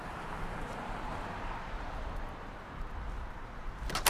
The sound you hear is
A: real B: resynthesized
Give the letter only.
A